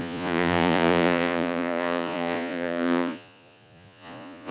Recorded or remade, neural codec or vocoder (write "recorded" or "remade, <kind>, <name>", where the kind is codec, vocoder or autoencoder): remade, vocoder, Vocos